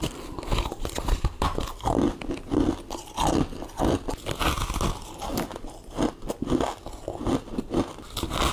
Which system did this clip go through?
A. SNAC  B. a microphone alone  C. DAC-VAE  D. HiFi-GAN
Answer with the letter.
B